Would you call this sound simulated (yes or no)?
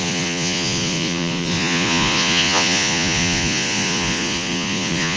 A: yes